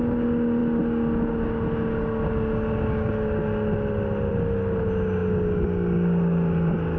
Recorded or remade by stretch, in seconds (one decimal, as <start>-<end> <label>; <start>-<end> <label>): 0.0-7.0 recorded